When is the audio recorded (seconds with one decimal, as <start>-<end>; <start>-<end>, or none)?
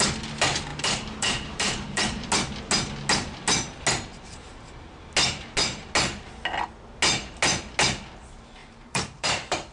0.0-0.7; 2.3-8.6